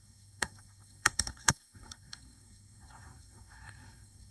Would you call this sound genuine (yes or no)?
no